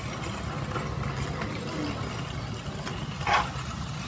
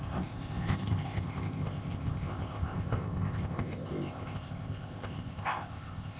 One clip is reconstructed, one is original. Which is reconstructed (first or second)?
second